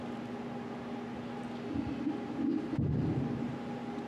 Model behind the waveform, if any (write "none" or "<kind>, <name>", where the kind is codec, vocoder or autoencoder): none